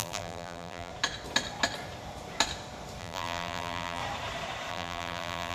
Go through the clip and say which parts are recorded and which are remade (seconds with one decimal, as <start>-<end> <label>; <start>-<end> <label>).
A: 0.0-0.9 remade; 0.9-3.0 recorded; 3.0-4.0 remade; 4.0-4.7 recorded; 4.7-5.5 remade